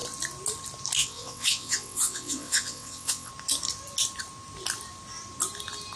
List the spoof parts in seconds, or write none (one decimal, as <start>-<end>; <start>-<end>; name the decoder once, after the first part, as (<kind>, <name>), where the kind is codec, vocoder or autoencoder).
1.0-3.3 (vocoder, WaveNeXt)